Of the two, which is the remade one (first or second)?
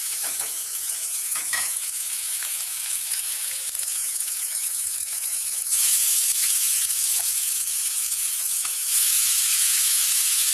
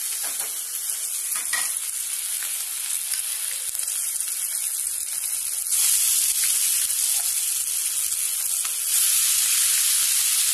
first